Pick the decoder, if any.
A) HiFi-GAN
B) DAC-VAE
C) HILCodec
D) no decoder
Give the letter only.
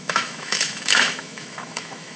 B